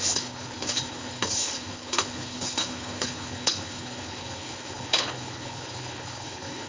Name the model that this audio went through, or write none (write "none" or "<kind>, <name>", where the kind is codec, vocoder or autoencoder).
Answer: codec, HILCodec